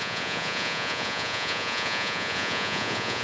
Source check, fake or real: fake